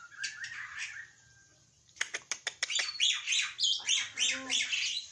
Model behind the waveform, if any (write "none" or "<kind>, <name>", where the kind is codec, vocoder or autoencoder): none